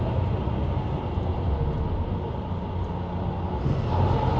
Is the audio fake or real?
real